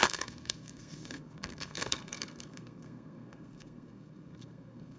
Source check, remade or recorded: remade